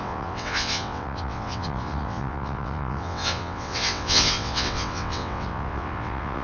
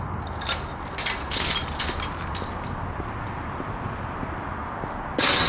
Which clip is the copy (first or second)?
first